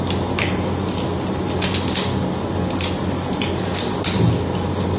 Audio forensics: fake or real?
real